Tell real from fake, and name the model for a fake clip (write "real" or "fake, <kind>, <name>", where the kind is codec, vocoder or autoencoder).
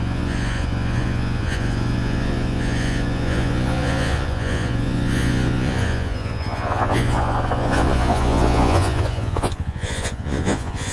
fake, vocoder, Vocos